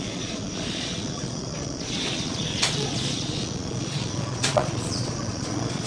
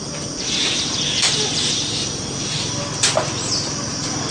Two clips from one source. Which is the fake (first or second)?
first